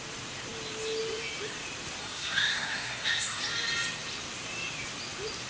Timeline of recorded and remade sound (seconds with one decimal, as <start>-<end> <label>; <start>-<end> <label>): 0.0-2.0 recorded; 2.0-3.4 remade; 3.4-5.5 recorded